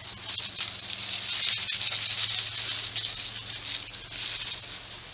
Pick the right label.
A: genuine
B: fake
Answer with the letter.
A